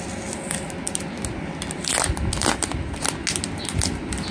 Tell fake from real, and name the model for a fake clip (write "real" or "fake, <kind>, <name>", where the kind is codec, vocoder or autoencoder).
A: real